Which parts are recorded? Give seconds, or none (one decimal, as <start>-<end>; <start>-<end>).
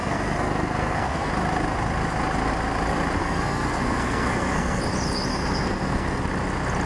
1.3-3.2; 4.8-5.3; 6.2-6.9